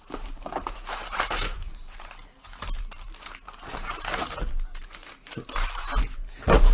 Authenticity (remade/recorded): remade